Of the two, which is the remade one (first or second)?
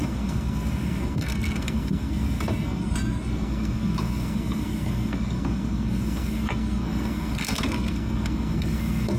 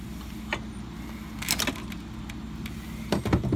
first